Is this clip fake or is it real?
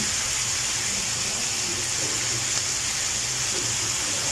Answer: real